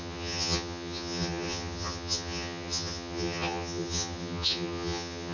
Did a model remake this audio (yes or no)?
yes